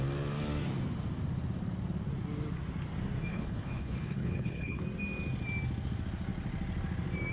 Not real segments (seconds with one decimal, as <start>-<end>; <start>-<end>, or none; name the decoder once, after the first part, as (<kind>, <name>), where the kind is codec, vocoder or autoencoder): 3.3-4.8 (codec, HILCodec)